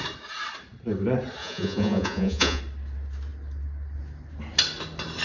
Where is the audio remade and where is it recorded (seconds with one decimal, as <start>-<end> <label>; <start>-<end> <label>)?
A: 0.0-1.4 recorded; 1.4-2.6 remade; 2.6-5.2 recorded